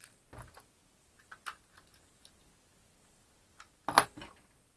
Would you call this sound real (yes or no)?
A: yes